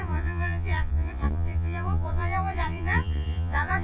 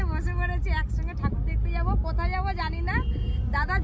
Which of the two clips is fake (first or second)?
first